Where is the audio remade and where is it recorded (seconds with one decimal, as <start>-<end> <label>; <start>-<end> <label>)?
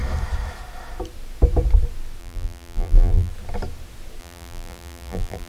0.0-2.2 recorded; 2.2-3.3 remade; 3.3-4.2 recorded; 4.2-5.5 remade